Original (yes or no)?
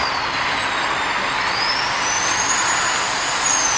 yes